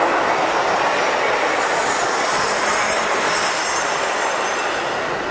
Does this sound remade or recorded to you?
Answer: recorded